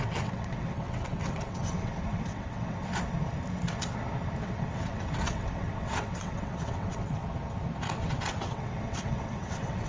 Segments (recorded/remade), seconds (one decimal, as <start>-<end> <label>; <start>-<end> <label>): 0.0-2.9 remade; 2.9-4.4 recorded; 4.4-7.2 remade; 7.2-7.9 recorded; 7.9-9.9 remade